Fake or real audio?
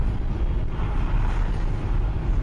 real